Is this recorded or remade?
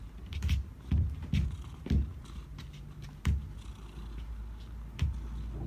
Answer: recorded